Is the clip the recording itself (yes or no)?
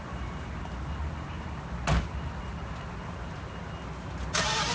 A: yes